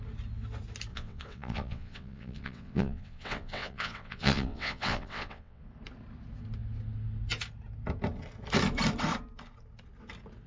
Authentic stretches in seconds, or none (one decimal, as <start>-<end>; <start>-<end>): 0.0-0.9; 5.6-10.5